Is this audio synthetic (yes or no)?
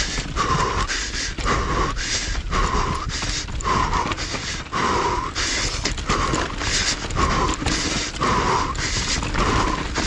no